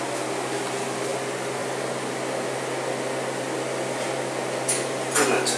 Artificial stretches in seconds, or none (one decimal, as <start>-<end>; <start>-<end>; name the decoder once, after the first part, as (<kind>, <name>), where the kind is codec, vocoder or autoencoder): none